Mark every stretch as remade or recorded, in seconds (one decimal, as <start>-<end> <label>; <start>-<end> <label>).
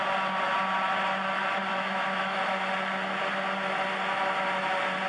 0.0-1.7 recorded; 1.7-2.4 remade; 2.4-5.1 recorded